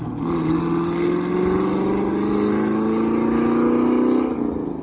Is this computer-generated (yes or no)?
no